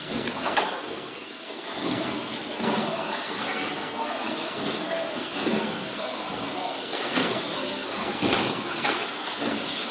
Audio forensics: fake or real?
fake